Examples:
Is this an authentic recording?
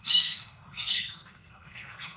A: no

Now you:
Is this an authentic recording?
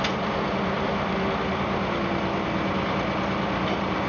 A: yes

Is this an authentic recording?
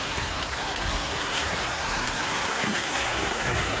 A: no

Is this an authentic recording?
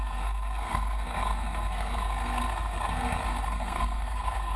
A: no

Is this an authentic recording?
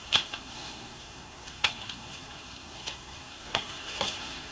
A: no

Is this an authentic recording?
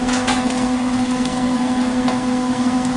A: no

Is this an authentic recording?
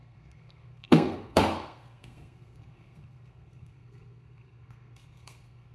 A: no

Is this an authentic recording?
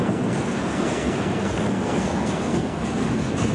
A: no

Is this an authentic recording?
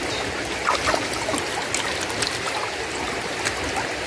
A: yes